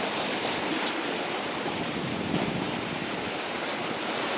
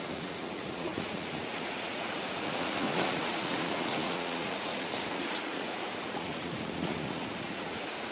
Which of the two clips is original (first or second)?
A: first